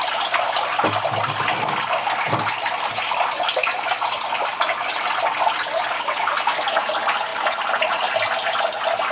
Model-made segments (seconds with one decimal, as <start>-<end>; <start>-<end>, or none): none